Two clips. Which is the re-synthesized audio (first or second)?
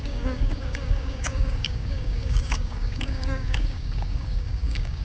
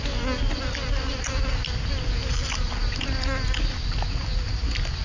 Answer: first